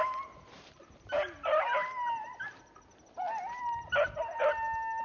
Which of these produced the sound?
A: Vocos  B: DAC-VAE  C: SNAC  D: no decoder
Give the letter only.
D